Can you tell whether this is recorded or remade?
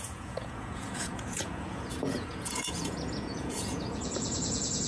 remade